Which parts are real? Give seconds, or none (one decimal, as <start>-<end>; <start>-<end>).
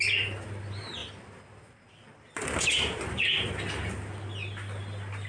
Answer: 0.0-5.3